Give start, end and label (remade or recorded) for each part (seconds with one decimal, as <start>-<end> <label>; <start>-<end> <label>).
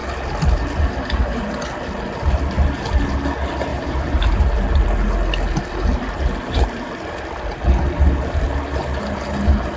0.0-3.7 recorded; 3.7-4.4 remade; 4.4-9.8 recorded